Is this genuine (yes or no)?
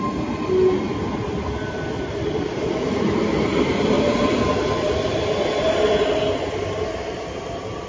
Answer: yes